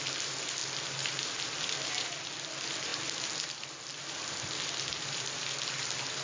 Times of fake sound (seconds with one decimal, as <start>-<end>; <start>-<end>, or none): 0.0-0.6; 1.9-6.2